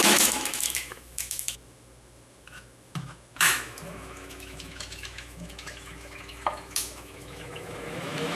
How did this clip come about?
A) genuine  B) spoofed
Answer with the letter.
B